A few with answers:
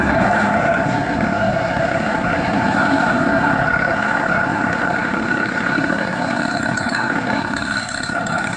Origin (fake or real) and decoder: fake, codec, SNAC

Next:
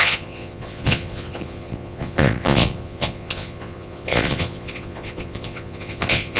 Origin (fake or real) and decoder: fake, vocoder, Vocos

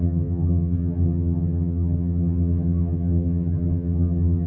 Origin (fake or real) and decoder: fake, vocoder, HiFi-GAN